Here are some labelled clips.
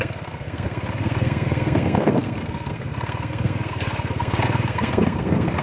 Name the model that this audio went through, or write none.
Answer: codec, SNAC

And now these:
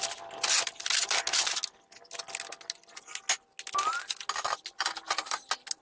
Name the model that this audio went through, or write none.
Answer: none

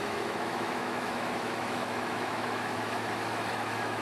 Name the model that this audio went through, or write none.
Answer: autoencoder, DAC-VAE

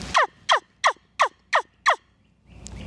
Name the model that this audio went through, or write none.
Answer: none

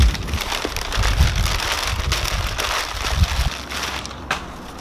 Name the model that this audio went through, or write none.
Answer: none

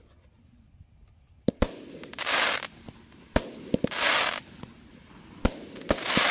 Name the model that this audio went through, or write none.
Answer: none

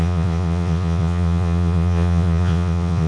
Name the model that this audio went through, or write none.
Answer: vocoder, Vocos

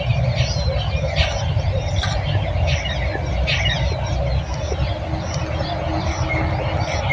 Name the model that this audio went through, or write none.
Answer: none